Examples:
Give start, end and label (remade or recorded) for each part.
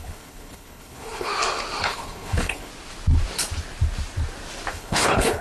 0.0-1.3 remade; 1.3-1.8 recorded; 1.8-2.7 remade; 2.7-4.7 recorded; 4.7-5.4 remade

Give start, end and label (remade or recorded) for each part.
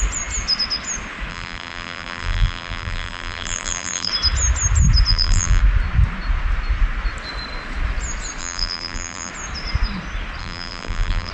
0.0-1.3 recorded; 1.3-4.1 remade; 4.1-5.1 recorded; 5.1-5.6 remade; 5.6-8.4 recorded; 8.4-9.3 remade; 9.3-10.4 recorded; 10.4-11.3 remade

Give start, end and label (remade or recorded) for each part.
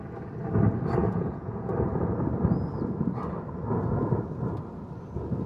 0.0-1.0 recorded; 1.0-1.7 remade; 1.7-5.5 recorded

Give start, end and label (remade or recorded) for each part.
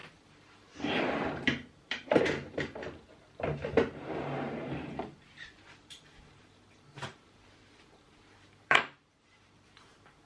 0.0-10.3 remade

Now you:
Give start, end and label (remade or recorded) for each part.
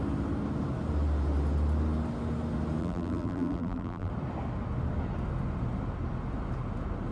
0.0-2.8 recorded; 2.8-4.1 remade; 4.1-7.1 recorded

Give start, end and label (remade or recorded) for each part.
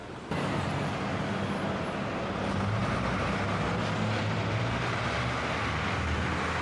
0.0-6.6 recorded